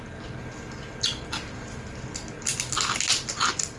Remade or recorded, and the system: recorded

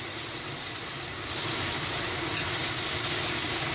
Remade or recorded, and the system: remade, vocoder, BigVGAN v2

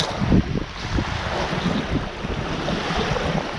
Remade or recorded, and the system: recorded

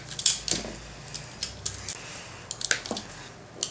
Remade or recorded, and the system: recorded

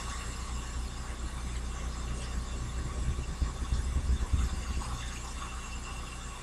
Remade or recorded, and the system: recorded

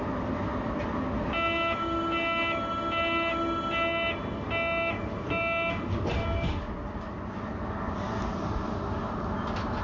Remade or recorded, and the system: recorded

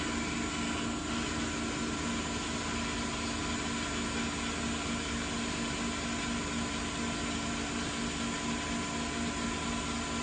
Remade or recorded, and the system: recorded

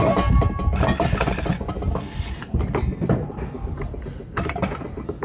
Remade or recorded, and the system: recorded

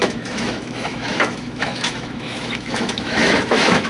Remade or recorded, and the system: remade, autoencoder, DAC-VAE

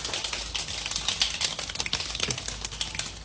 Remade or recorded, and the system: recorded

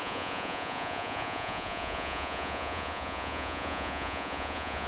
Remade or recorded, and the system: remade, vocoder, Vocos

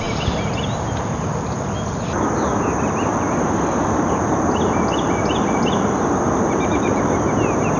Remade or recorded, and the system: recorded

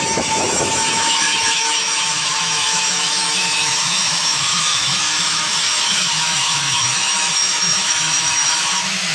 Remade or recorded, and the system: remade, autoencoder, DAC-VAE